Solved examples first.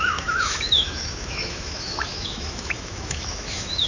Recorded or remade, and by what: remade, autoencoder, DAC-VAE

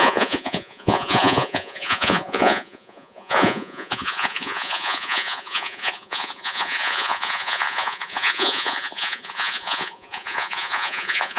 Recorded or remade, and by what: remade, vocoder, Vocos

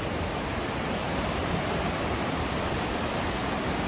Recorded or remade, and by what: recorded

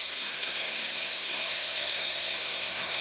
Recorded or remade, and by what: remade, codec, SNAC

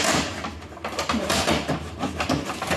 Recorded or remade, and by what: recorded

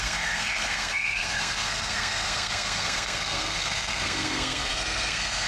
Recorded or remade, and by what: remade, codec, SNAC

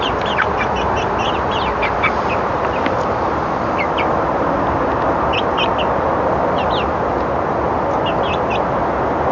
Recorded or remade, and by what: recorded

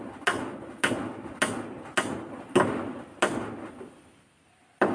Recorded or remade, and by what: recorded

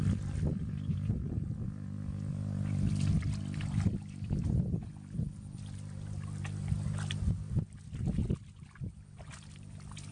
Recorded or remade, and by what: recorded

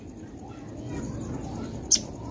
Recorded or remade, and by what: recorded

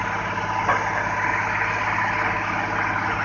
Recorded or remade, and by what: recorded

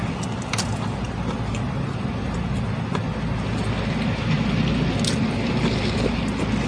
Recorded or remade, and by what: recorded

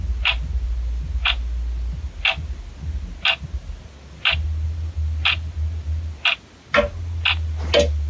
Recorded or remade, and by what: recorded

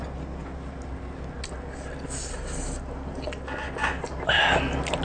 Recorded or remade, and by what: recorded